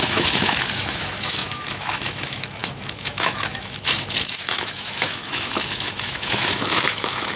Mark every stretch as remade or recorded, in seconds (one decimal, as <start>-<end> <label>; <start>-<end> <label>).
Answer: 0.0-7.4 remade